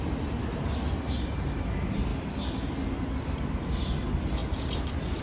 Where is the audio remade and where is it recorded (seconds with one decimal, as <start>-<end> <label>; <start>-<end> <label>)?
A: 0.0-5.2 recorded